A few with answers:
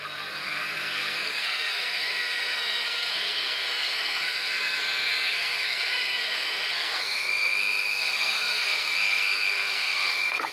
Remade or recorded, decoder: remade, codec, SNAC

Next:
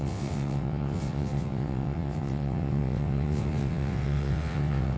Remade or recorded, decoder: remade, vocoder, WaveNeXt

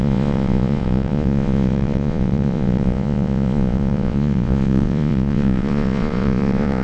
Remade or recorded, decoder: remade, vocoder, Vocos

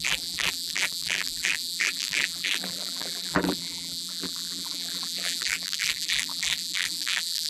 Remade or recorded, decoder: remade, vocoder, BigVGAN v2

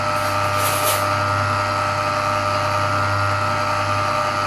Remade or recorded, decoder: recorded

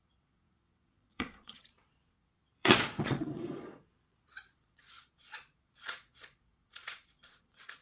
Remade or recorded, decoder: remade, vocoder, Vocos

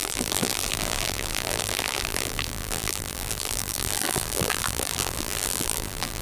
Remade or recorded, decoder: remade, vocoder, BigVGAN v2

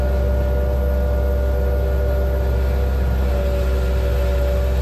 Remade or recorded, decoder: recorded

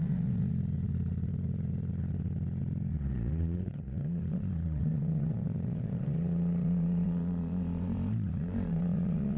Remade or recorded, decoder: remade, vocoder, Vocos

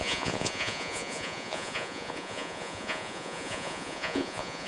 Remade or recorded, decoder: remade, vocoder, Vocos